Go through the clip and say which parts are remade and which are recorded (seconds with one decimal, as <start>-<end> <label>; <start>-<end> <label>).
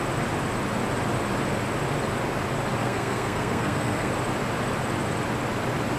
0.0-2.8 recorded; 2.8-4.1 remade; 4.1-6.0 recorded